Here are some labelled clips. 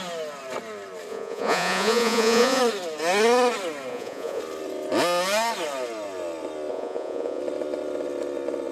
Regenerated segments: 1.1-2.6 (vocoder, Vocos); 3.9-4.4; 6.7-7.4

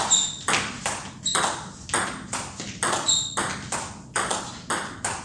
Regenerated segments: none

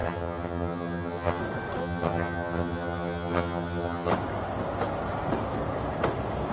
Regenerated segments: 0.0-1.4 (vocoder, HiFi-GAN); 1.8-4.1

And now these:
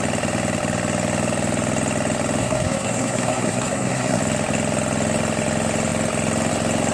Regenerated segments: 2.4-4.2 (codec, SNAC)

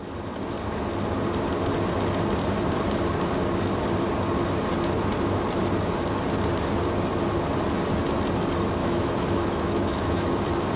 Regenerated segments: 8.8-10.4 (autoencoder, DAC-VAE)

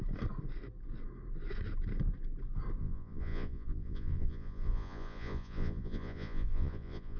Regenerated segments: 2.8-7.2 (vocoder, Vocos)

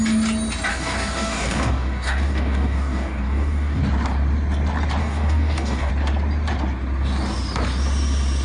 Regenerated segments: 0.7-3.8 (codec, DAC); 5.0-5.9

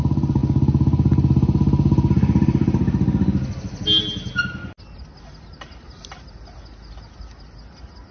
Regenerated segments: none